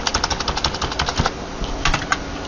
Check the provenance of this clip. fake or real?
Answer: real